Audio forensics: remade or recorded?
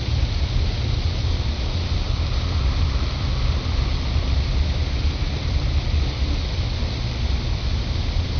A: recorded